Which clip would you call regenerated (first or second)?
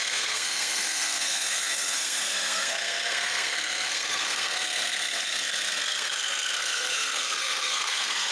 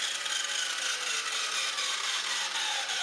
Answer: first